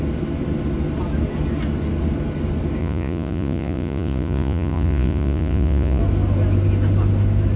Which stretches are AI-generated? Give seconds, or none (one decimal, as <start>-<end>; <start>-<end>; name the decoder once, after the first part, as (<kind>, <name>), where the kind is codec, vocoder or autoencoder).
2.8-6.0 (vocoder, Vocos)